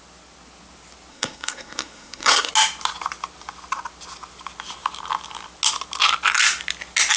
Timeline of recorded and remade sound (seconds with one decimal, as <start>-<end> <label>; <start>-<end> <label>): 0.0-1.1 recorded; 1.1-2.5 remade; 2.5-7.2 recorded